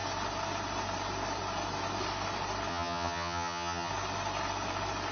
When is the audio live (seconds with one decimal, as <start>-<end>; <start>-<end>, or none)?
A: 0.0-2.7; 3.9-5.1